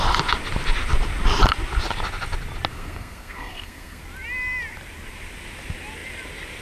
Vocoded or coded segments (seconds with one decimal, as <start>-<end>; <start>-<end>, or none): 2.7-4.0